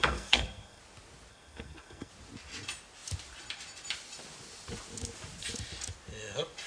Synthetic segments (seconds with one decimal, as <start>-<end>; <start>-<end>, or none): 0.0-0.8; 1.3-2.1